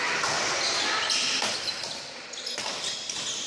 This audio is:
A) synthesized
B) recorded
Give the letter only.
B